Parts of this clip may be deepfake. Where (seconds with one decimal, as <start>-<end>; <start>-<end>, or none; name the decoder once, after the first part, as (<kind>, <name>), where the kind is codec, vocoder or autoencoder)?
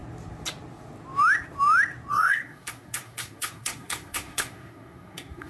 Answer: 2.1-5.5 (codec, SNAC)